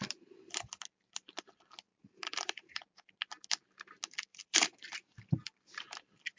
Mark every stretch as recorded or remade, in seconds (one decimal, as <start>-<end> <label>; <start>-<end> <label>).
0.0-1.9 recorded; 1.9-2.8 remade; 2.8-4.3 recorded; 4.3-5.5 remade; 5.5-6.4 recorded